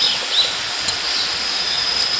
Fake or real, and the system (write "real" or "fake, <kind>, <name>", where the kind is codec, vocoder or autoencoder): real